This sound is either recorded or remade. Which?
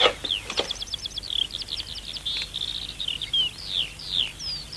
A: recorded